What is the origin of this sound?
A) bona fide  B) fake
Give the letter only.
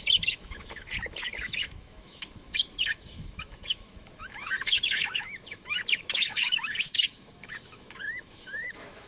B